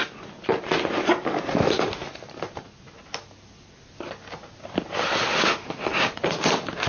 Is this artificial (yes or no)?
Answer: no